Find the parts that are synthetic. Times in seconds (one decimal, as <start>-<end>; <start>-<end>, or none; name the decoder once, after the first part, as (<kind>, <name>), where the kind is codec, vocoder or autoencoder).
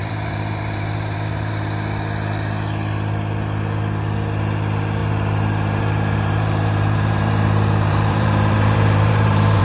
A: 0.0-1.5 (vocoder, BigVGAN v2); 5.0-9.6